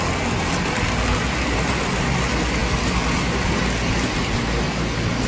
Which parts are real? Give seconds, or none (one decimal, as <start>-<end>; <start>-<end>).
0.0-5.3